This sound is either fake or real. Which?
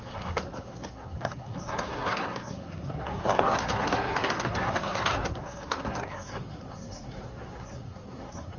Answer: fake